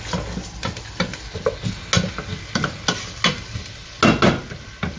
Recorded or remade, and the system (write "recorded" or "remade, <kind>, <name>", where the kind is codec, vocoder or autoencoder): recorded